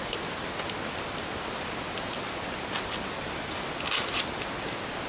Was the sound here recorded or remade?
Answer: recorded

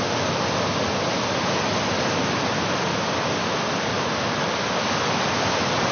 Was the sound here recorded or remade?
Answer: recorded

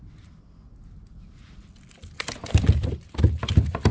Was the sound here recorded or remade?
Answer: recorded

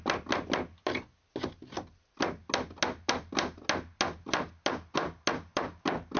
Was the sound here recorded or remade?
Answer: recorded